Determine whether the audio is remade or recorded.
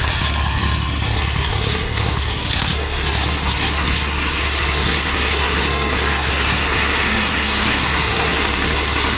remade